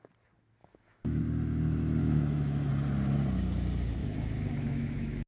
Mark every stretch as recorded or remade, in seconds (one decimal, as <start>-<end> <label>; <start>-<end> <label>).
0.0-0.6 recorded; 0.6-1.2 remade; 1.2-2.0 recorded; 2.0-2.7 remade; 2.7-4.0 recorded; 4.0-5.3 remade